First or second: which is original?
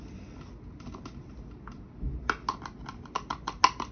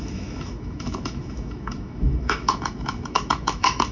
first